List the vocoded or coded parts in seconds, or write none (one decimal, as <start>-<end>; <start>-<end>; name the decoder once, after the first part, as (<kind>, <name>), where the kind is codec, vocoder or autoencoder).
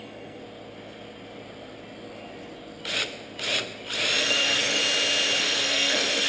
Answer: 0.0-0.4 (codec, SNAC); 4.2-4.8; 5.4-6.3